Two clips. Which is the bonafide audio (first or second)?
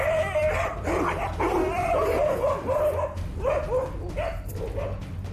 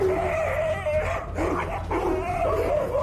second